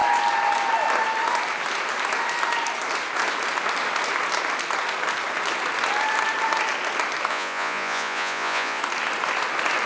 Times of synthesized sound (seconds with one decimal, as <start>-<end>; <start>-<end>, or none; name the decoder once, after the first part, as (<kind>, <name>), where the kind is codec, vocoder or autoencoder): 7.3-8.8 (vocoder, Vocos)